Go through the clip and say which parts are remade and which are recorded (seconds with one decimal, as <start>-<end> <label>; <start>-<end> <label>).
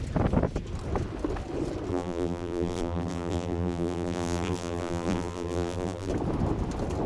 0.0-1.9 recorded; 1.9-6.1 remade; 6.1-7.1 recorded